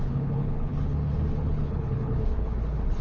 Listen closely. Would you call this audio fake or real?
fake